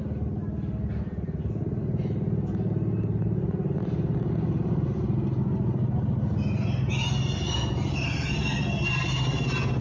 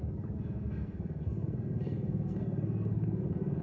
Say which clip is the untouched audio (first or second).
first